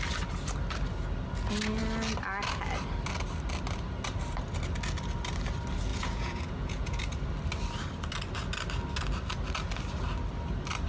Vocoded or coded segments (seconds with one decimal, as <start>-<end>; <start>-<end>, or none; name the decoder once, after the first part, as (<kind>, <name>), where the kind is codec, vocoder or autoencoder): 5.9-7.0 (vocoder, Vocos)